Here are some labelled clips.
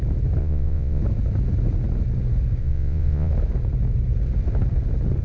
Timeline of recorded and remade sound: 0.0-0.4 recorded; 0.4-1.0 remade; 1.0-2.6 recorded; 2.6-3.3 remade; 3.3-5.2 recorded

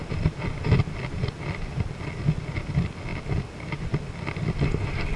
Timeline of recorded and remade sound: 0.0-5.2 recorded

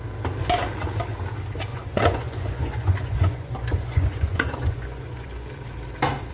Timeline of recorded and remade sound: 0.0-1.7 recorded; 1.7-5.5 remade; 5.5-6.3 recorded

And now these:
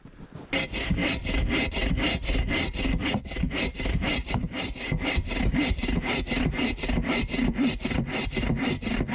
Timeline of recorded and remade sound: 0.0-9.1 recorded